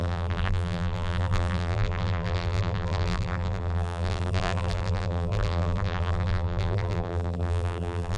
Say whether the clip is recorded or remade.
remade